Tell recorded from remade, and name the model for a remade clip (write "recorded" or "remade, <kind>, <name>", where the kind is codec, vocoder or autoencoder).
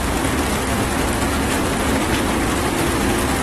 recorded